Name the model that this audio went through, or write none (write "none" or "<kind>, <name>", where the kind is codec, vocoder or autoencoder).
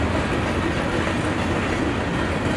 none